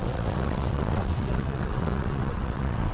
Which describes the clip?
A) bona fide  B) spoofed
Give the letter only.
B